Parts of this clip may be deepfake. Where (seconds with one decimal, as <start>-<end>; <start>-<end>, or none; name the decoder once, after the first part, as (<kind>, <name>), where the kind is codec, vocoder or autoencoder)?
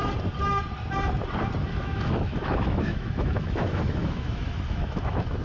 1.7-5.4 (autoencoder, DAC-VAE)